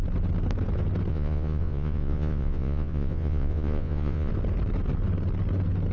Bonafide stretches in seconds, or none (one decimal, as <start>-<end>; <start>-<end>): 0.0-1.1; 4.3-5.9